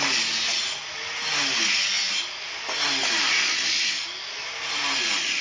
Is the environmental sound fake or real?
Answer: real